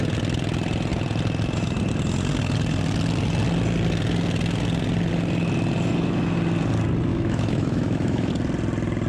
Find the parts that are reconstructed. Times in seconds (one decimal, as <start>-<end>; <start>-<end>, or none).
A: 7.1-8.3